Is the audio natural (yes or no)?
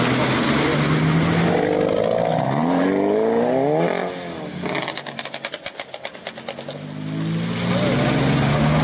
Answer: yes